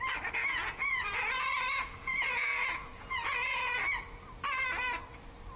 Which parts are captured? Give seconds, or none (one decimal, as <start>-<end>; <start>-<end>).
0.0-0.4; 3.8-5.6